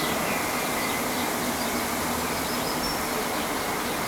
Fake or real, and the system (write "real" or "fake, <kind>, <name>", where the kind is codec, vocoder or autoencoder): real